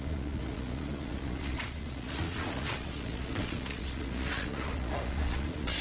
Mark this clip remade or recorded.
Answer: remade